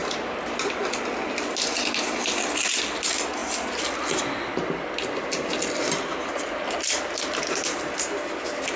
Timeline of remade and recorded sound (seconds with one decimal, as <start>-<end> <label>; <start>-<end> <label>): 0.0-2.2 recorded; 2.2-2.7 remade; 2.7-8.8 recorded